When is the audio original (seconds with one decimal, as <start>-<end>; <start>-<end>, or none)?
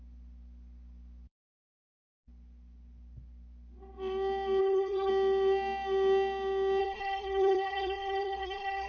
0.0-4.6; 5.1-6.8